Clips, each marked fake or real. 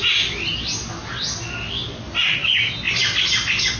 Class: real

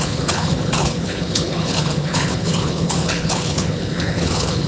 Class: fake